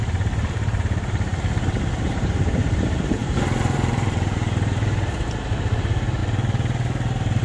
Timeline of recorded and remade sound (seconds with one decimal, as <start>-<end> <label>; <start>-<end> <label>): 0.0-1.3 remade; 1.3-2.1 recorded; 2.1-6.2 remade; 6.2-7.4 recorded